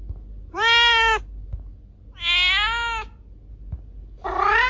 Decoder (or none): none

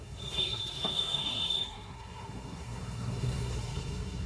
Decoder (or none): codec, SNAC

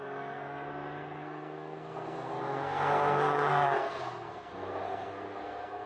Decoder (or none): codec, SNAC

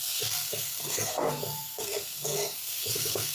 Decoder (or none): codec, SNAC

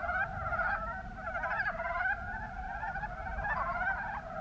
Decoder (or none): none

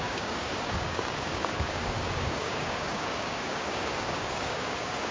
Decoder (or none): codec, DAC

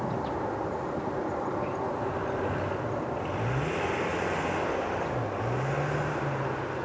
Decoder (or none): none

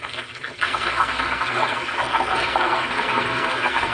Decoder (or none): codec, SNAC